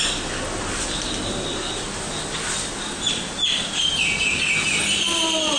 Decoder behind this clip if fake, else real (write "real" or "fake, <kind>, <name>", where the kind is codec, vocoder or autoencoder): real